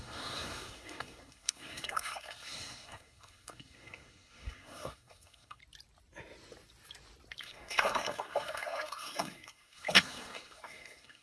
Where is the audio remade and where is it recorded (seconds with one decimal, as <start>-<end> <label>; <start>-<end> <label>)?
0.0-5.6 remade; 5.6-7.4 recorded; 7.4-11.2 remade